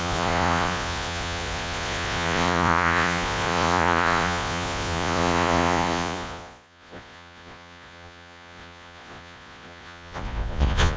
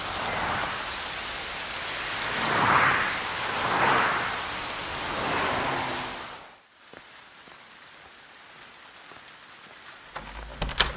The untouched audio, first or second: second